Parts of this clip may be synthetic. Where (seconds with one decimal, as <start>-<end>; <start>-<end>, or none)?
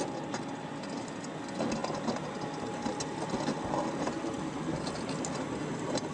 none